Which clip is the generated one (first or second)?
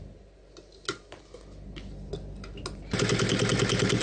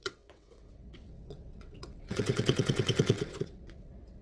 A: second